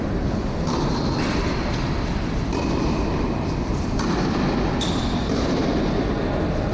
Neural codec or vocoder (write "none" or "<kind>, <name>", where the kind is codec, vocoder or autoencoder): none